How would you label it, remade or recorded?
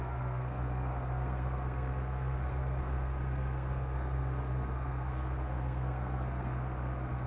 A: remade